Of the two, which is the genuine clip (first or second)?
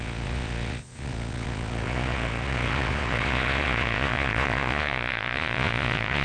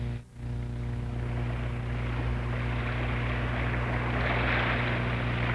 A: second